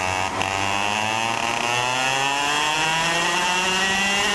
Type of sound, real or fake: real